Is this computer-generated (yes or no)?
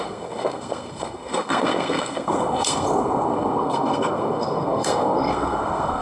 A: yes